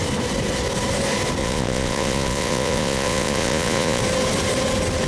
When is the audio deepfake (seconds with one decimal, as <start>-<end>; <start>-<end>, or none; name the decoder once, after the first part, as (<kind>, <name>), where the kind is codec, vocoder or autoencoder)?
1.4-4.0 (vocoder, Vocos)